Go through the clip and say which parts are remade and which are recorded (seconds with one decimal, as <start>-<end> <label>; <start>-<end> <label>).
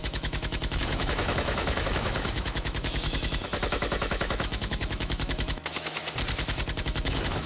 0.0-6.0 remade; 6.0-6.8 recorded; 6.8-7.5 remade